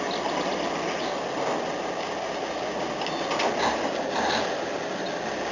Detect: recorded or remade recorded